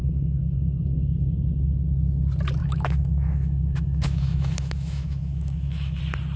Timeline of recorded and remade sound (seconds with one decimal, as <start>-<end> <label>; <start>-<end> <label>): 0.0-0.6 remade; 0.6-2.6 recorded; 2.6-6.0 remade; 6.0-6.4 recorded